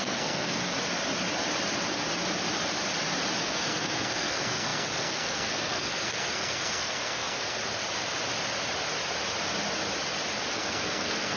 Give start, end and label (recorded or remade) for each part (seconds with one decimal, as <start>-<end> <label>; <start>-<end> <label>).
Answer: 0.0-0.7 remade; 0.7-3.4 recorded; 3.4-7.6 remade; 7.6-10.5 recorded; 10.5-11.4 remade